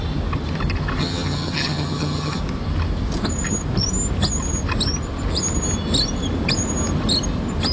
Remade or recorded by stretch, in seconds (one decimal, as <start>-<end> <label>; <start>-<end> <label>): 0.0-1.0 recorded; 1.0-2.4 remade; 2.4-7.7 recorded